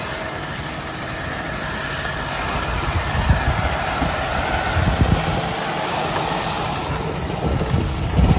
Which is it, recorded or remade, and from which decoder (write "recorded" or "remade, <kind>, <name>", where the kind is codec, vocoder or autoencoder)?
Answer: recorded